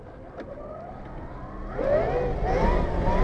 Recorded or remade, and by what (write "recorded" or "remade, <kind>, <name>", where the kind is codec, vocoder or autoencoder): recorded